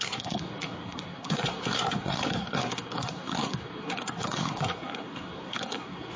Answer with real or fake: fake